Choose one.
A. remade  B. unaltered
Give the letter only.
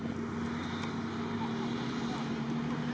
B